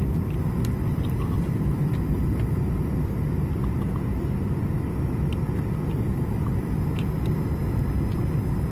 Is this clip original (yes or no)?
yes